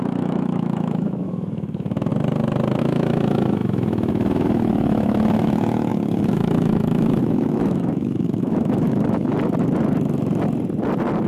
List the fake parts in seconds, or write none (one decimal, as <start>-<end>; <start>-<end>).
0.0-2.1; 2.8-9.3